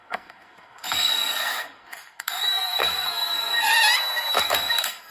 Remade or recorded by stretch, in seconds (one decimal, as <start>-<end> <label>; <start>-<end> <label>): 0.0-3.7 remade; 3.7-4.4 recorded; 4.4-5.1 remade

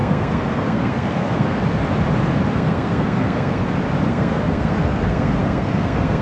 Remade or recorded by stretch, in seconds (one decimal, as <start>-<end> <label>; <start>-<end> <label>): 0.0-1.6 remade; 1.6-2.5 recorded; 2.5-3.6 remade; 3.6-4.1 recorded; 4.1-6.2 remade

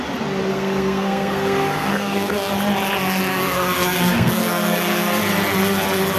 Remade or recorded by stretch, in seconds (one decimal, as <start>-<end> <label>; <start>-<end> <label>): 0.0-0.5 recorded; 0.5-2.5 remade; 2.5-3.3 recorded; 3.3-5.2 remade; 5.2-6.2 recorded

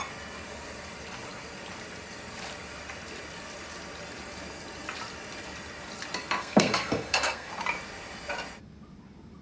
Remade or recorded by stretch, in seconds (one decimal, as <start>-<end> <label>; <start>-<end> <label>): 0.0-6.4 recorded; 6.4-7.5 remade; 7.5-9.4 recorded

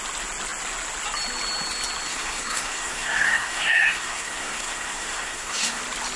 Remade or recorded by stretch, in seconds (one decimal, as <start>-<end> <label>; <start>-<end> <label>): 0.0-2.1 recorded; 2.1-5.8 remade; 5.8-6.2 recorded

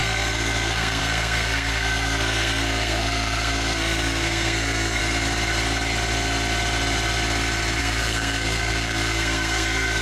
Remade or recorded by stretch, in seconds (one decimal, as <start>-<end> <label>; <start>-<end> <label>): 0.0-5.0 remade; 5.0-7.8 recorded; 7.8-10.0 remade

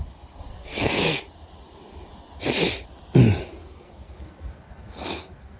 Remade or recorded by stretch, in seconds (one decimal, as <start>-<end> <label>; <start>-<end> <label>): 0.0-0.5 recorded; 0.5-1.2 remade; 1.2-3.6 recorded; 3.6-5.6 remade

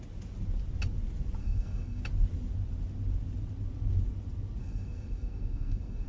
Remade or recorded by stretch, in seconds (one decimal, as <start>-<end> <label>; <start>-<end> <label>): 0.0-1.4 recorded; 1.4-2.0 remade; 2.0-4.6 recorded; 4.6-6.1 remade